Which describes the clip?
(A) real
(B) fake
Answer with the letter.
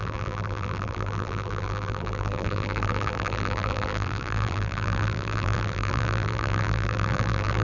B